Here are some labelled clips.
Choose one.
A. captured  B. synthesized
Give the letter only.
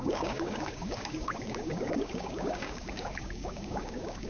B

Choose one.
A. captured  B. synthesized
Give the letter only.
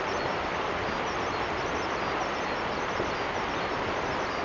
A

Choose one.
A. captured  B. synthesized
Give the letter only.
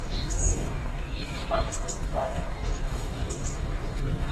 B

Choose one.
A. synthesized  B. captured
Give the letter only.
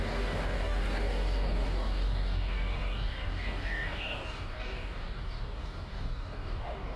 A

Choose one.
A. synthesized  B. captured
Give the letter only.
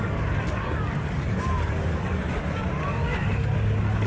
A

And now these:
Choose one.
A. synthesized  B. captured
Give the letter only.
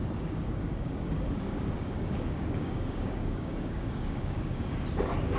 A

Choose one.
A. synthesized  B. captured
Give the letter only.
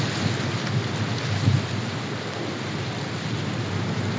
B